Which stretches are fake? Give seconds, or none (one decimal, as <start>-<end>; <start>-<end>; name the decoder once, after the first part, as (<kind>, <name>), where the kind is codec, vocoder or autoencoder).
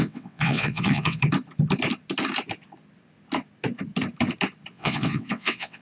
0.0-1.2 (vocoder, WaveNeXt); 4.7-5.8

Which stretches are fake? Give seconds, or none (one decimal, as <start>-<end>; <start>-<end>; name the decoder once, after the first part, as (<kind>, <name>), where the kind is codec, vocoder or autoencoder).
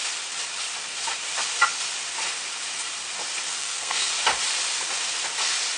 3.6-4.1 (codec, SNAC)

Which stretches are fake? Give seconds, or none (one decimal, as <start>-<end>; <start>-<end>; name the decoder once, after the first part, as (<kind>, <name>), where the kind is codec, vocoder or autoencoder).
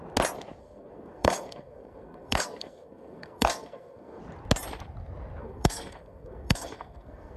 0.6-4.2 (codec, SNAC); 5.4-7.4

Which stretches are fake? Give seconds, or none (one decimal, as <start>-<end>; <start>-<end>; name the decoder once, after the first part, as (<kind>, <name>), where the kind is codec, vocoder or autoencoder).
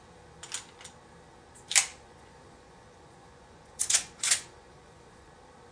1.9-5.3 (vocoder, Vocos)